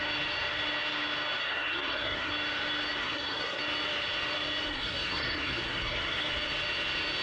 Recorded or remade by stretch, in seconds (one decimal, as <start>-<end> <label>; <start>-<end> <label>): 0.0-1.4 recorded; 1.4-2.3 remade; 2.3-3.0 recorded; 3.0-3.6 remade; 3.6-4.7 recorded; 4.7-6.3 remade; 6.3-7.2 recorded